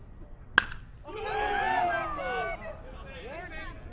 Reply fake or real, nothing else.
real